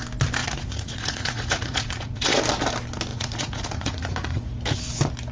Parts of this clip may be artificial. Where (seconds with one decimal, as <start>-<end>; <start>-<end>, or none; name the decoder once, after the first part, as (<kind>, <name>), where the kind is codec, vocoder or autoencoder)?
0.4-2.4 (vocoder, Vocos); 3.1-4.5